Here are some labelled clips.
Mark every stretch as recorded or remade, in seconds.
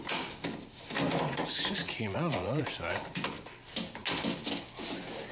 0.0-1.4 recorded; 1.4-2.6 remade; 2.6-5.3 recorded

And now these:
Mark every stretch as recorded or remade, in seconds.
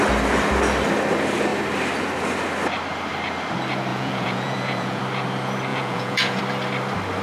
0.0-3.9 recorded; 3.9-5.0 remade; 5.0-5.7 recorded; 5.7-6.4 remade; 6.4-7.2 recorded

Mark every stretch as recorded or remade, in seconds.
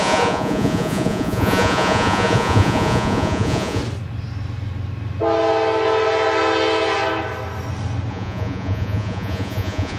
0.0-3.8 remade; 3.8-8.1 recorded; 8.1-10.0 remade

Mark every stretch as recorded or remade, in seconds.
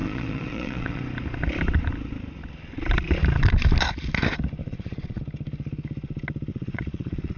0.0-1.0 remade; 1.0-4.6 recorded; 4.6-5.2 remade; 5.2-6.5 recorded; 6.5-7.4 remade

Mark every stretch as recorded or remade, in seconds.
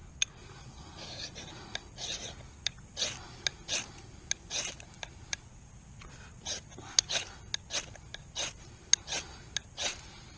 0.0-10.4 recorded